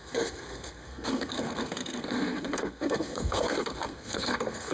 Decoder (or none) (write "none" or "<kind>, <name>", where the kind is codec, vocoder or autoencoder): codec, SNAC